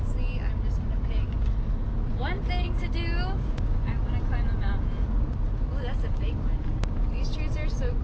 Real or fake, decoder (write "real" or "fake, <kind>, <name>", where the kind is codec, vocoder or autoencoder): real